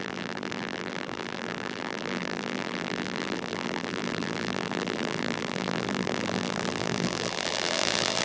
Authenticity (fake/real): fake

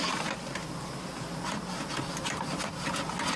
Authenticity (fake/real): real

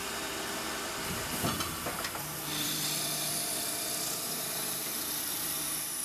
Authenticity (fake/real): fake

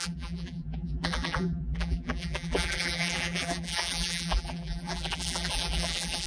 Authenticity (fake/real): fake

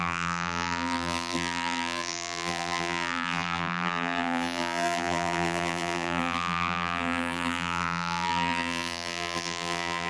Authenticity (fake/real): fake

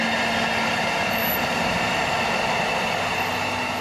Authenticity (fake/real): real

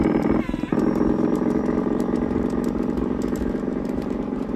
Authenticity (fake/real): fake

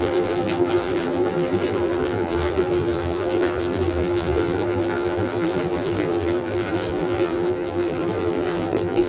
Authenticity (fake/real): fake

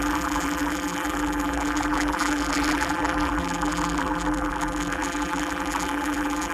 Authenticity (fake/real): fake